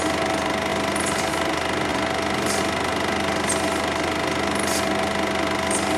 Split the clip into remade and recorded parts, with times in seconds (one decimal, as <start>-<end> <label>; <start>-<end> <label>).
0.0-6.0 recorded